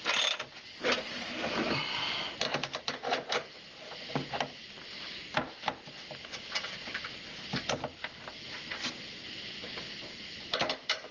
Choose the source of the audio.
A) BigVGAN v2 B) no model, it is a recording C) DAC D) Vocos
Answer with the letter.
B